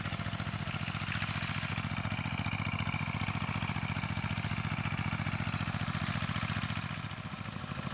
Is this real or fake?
real